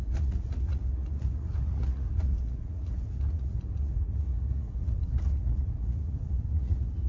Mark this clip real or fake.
fake